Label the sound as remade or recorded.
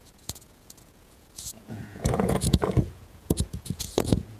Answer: remade